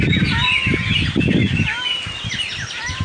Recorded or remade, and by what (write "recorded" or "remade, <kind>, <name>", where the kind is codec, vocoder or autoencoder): recorded